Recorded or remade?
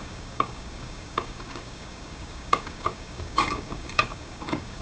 remade